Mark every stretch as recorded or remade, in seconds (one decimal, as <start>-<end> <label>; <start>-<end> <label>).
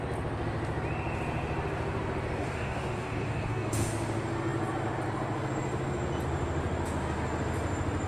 0.0-2.4 recorded; 2.4-3.9 remade; 3.9-8.1 recorded